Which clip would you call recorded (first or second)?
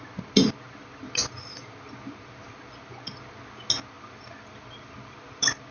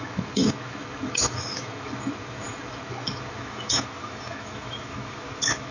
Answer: first